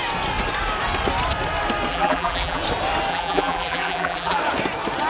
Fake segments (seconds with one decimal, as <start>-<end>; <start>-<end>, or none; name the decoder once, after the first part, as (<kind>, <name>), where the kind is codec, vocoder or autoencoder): 1.9-2.6 (vocoder, BigVGAN v2); 3.1-4.4